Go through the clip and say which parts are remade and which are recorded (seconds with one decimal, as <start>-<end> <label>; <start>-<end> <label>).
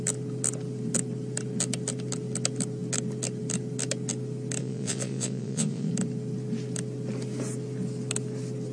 0.0-4.6 recorded; 4.6-5.9 remade; 5.9-8.7 recorded